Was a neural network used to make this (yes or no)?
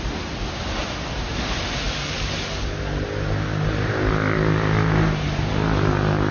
no